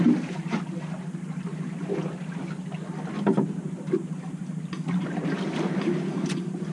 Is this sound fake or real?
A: real